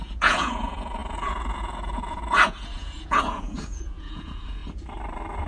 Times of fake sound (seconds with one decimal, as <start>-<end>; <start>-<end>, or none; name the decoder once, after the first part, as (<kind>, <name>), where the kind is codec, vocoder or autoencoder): 0.0-4.6 (vocoder, Vocos)